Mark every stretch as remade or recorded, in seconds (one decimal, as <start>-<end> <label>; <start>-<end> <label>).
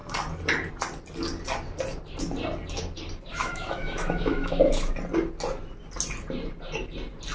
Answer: 0.0-3.3 recorded; 3.3-4.9 remade; 4.9-7.3 recorded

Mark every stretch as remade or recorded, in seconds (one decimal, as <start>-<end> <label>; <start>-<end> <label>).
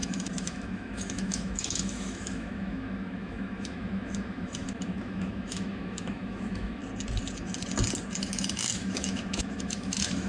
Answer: 0.0-6.8 remade; 6.8-8.2 recorded; 8.2-10.3 remade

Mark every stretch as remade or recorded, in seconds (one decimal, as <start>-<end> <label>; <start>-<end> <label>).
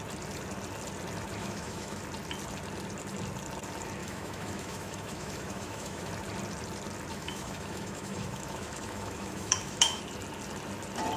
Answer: 0.0-1.4 recorded; 1.4-2.0 remade; 2.0-4.0 recorded; 4.0-6.1 remade; 6.1-7.1 recorded; 7.1-10.0 remade; 10.0-11.2 recorded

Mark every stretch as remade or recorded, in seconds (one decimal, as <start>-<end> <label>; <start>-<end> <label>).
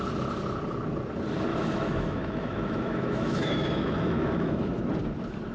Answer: 0.0-1.5 recorded; 1.5-4.8 remade; 4.8-5.5 recorded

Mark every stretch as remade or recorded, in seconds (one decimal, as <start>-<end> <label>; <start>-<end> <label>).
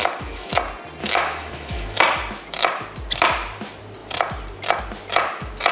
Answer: 0.0-0.5 remade; 0.5-1.0 recorded; 1.0-2.0 remade; 2.0-5.7 recorded